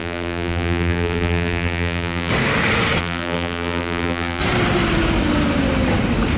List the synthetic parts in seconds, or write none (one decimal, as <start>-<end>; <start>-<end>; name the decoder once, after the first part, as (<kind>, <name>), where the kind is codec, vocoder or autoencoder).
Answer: 0.0-2.3 (vocoder, BigVGAN v2); 3.0-4.4